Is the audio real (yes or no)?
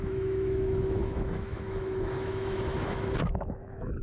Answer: no